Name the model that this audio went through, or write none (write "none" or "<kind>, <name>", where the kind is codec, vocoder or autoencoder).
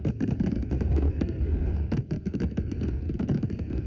codec, SNAC